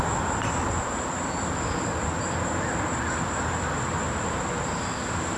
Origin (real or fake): real